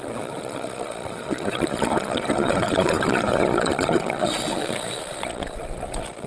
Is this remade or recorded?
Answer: remade